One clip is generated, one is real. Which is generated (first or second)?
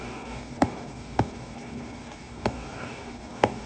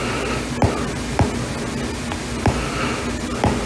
first